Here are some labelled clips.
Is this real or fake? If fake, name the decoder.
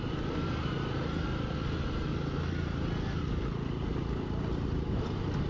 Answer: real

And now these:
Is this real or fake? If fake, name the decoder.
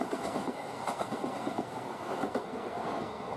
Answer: fake, codec, SNAC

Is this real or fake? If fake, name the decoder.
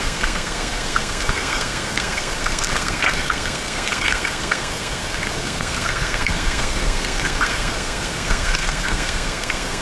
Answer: fake, codec, SNAC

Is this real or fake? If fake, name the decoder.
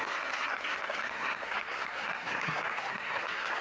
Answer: fake, codec, SNAC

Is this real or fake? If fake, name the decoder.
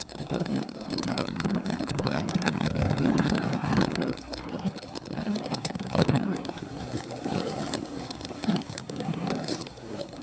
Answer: fake, codec, SNAC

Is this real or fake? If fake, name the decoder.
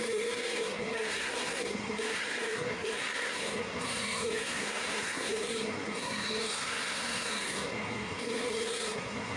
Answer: fake, codec, SNAC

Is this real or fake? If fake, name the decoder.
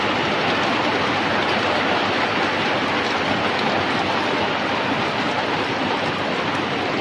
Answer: real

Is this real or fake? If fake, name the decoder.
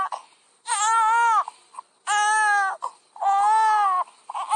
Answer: real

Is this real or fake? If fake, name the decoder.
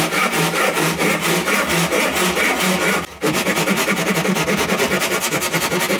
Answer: real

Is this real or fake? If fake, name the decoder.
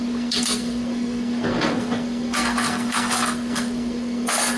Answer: fake, codec, SNAC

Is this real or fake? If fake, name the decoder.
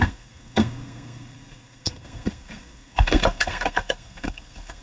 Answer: fake, codec, SNAC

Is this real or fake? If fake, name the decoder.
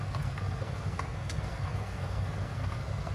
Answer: fake, codec, SNAC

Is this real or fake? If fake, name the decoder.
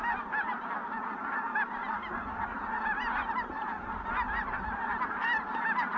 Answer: real